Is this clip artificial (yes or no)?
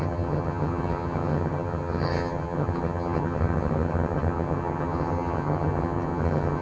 yes